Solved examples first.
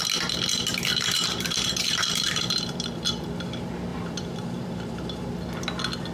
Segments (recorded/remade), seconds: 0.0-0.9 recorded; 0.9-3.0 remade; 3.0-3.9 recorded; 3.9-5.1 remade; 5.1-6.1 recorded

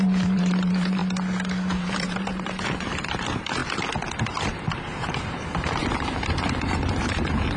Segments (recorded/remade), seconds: 0.0-1.0 remade; 1.0-1.7 recorded; 1.7-3.6 remade; 3.6-4.4 recorded; 4.4-7.6 remade

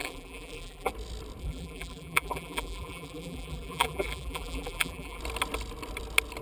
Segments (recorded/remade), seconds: 0.0-0.9 remade; 0.9-1.4 recorded; 1.4-5.2 remade; 5.2-6.4 recorded

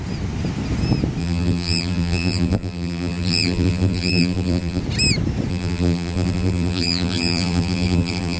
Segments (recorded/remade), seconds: 0.0-1.2 recorded; 1.2-4.8 remade; 4.8-5.5 recorded; 5.5-8.4 remade

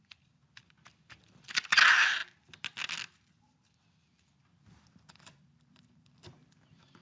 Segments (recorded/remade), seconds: 0.0-2.2 remade; 2.2-3.4 recorded; 3.4-7.0 remade